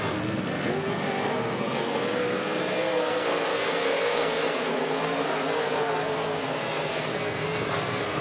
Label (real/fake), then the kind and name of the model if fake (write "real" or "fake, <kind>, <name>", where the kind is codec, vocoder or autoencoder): fake, codec, SNAC